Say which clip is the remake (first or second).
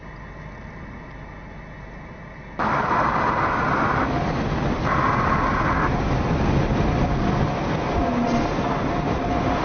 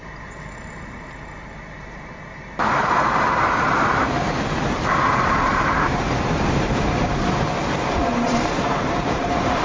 second